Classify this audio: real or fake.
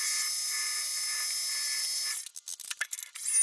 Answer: real